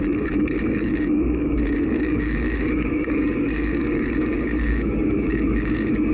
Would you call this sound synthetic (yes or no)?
yes